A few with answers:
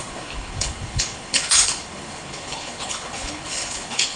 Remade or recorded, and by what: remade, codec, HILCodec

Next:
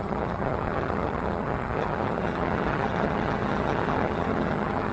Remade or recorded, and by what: remade, vocoder, HiFi-GAN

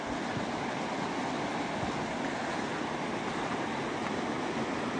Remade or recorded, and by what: recorded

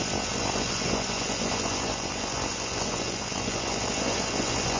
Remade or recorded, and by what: remade, vocoder, Vocos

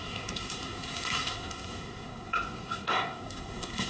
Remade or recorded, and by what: remade, codec, SNAC